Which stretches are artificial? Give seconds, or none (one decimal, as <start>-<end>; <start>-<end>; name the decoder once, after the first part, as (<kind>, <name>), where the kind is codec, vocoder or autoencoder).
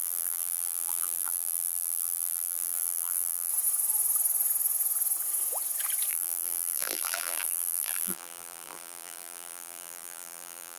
0.0-3.5 (vocoder, BigVGAN v2); 6.1-10.8